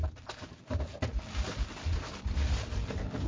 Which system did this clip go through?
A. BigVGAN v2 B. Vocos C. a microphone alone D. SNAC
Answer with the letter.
C